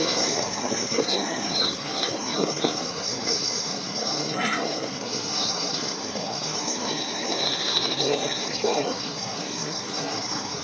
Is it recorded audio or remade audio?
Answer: remade